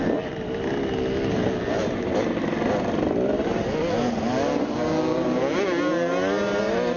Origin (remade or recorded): recorded